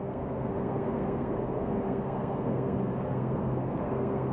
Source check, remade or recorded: remade